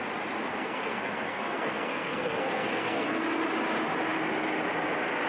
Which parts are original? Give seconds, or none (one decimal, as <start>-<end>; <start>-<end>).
0.0-0.5; 3.2-5.3